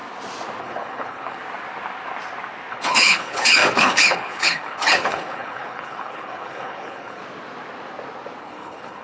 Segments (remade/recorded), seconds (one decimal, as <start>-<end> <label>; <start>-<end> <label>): 0.0-0.6 recorded; 0.6-1.4 remade; 1.4-2.7 recorded; 2.7-7.2 remade; 7.2-8.4 recorded; 8.4-9.0 remade